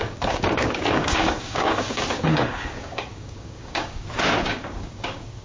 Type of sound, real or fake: fake